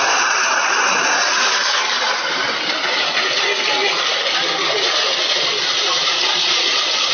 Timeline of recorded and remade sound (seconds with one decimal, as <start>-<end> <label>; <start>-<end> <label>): 0.0-7.1 recorded

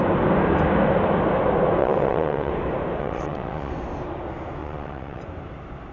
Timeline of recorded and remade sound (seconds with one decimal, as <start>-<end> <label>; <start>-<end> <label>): 0.0-1.8 recorded; 1.8-2.5 remade; 2.5-3.0 recorded; 3.0-3.7 remade; 3.7-4.6 recorded; 4.6-5.2 remade; 5.2-5.9 recorded

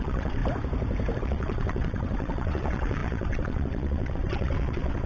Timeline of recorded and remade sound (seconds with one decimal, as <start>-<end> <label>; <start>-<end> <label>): 0.0-0.4 remade; 0.4-1.2 recorded; 1.2-5.1 remade

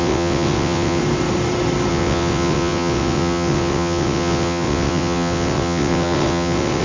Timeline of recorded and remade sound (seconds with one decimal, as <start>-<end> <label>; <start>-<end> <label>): 0.0-1.0 remade; 1.0-1.9 recorded; 1.9-6.8 remade

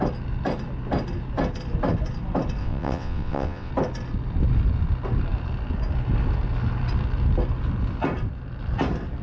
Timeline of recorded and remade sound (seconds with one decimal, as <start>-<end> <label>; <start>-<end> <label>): 0.0-2.6 recorded; 2.6-3.7 remade; 3.7-9.2 recorded

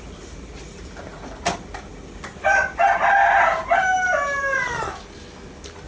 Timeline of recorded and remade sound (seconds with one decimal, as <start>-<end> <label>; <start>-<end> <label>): 0.0-5.9 recorded

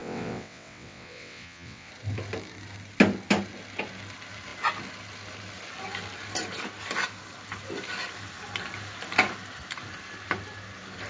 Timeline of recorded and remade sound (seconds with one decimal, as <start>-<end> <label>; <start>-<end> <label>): 0.0-1.9 remade; 1.9-11.1 recorded

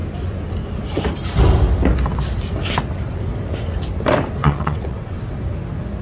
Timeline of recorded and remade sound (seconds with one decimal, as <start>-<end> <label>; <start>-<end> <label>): 0.0-4.4 recorded; 4.4-5.2 remade; 5.2-6.0 recorded